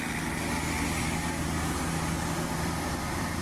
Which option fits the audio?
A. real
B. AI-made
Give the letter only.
A